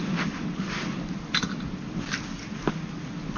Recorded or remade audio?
recorded